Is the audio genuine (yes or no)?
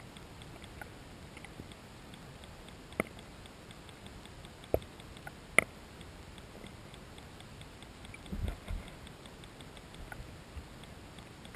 yes